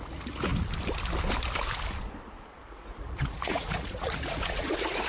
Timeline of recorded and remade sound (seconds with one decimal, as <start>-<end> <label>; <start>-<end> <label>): 0.0-0.5 remade; 0.5-2.6 recorded; 2.6-5.1 remade